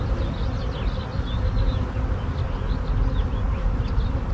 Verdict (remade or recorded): recorded